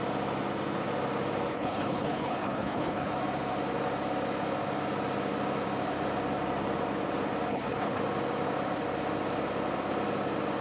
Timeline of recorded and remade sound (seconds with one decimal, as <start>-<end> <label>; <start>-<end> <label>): 0.0-1.5 recorded; 1.5-3.1 remade; 3.1-7.5 recorded; 7.5-8.0 remade; 8.0-10.6 recorded